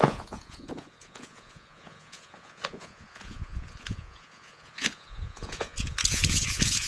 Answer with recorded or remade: remade